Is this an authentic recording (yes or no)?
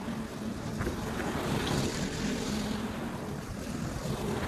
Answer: yes